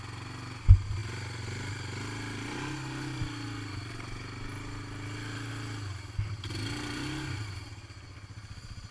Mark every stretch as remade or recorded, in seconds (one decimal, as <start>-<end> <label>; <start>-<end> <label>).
0.0-8.9 recorded